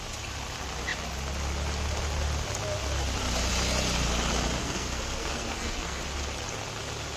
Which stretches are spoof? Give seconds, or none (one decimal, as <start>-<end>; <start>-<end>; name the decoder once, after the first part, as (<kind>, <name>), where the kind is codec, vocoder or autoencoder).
4.6-6.0 (codec, SNAC)